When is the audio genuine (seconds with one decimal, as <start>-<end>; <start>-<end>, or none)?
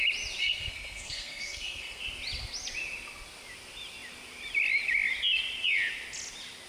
0.0-0.4; 2.0-6.7